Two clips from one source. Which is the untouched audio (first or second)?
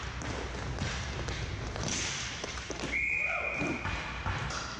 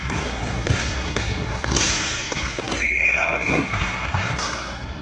first